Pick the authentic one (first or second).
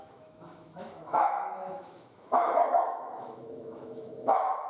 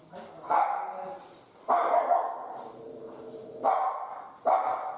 second